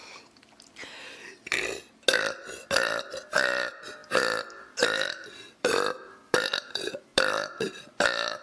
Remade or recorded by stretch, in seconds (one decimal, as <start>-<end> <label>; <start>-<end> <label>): 0.0-4.0 recorded; 4.0-6.4 remade; 6.4-7.1 recorded; 7.1-7.8 remade; 7.8-8.4 recorded